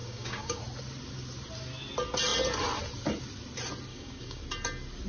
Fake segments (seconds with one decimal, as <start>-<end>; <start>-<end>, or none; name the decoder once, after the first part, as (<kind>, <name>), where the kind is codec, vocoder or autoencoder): 0.0-0.6 (codec, DAC); 3.9-4.4